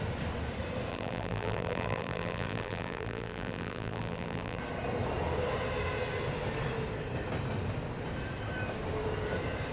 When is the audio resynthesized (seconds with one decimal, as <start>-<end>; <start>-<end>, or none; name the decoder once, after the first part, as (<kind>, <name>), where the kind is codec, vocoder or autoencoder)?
0.9-4.6 (vocoder, BigVGAN v2)